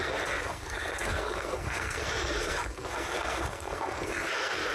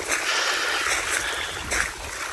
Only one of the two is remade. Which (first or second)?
first